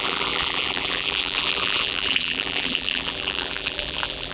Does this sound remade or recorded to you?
remade